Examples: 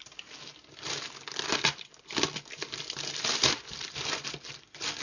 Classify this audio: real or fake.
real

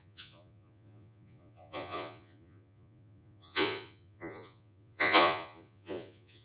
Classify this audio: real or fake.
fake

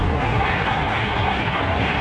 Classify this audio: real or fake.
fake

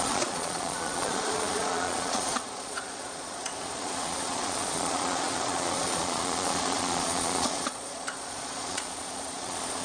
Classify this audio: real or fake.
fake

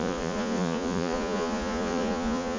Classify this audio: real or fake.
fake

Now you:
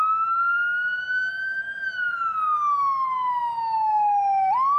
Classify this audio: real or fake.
real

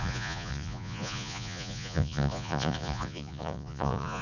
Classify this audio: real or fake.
fake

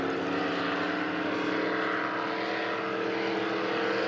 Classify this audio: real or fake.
real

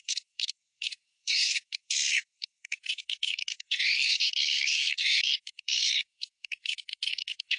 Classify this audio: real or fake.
fake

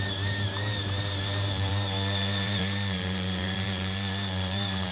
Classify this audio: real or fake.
fake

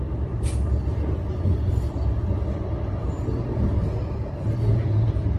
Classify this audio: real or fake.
real